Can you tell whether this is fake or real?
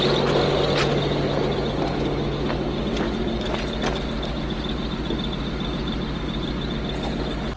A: real